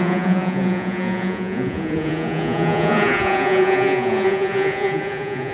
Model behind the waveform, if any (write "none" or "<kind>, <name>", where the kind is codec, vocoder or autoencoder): vocoder, Vocos